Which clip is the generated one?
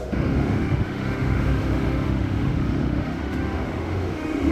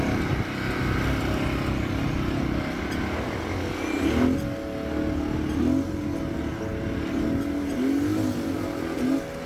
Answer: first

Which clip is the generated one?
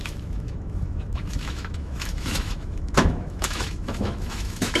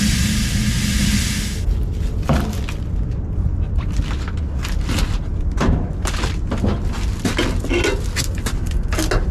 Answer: first